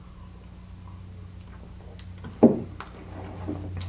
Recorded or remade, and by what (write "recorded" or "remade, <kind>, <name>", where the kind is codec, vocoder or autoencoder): recorded